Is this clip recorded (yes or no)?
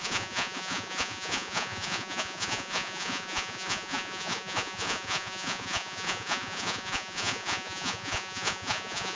no